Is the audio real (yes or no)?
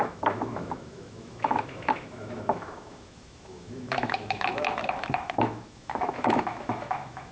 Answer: no